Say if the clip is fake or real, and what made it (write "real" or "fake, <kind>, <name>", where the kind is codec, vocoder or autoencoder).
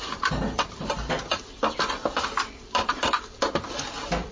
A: real